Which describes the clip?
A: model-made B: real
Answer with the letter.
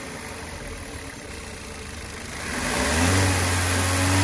B